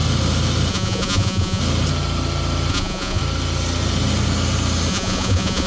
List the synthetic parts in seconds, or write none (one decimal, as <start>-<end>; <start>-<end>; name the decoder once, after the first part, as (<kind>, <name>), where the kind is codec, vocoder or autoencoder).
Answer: 0.7-1.6 (vocoder, Vocos); 2.7-3.2; 4.9-5.7